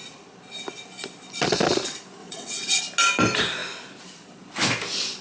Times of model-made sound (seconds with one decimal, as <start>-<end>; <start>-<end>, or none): 2.2-2.8